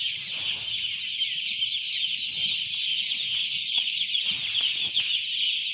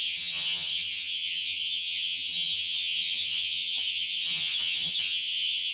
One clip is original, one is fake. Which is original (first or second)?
first